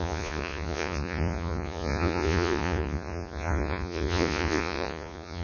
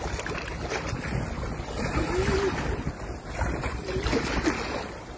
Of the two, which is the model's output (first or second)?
first